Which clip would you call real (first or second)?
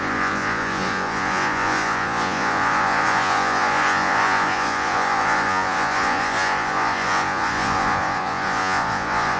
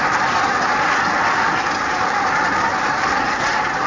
second